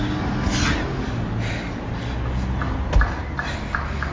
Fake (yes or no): no